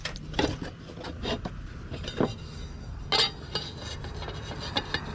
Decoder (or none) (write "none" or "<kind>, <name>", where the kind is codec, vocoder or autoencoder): none